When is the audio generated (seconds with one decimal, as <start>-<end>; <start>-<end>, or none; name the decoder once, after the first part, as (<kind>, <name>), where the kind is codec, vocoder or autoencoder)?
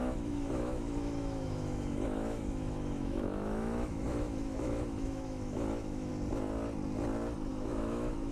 0.0-6.1 (autoencoder, DAC-VAE); 7.5-8.3